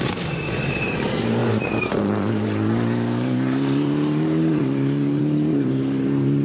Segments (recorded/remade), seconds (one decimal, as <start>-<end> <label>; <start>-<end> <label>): 0.0-6.4 remade